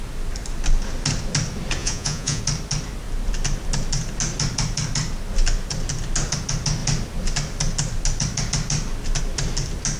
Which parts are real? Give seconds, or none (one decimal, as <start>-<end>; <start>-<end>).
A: 0.0-1.8; 2.4-10.0